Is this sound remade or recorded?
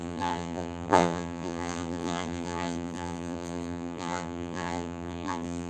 remade